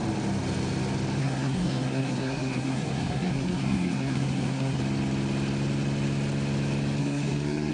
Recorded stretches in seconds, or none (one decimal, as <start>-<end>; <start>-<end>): 0.0-1.2; 4.8-7.0